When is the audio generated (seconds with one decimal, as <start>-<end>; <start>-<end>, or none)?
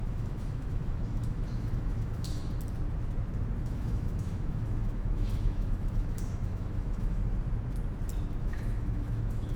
0.0-2.4; 3.6-7.2; 8.4-9.6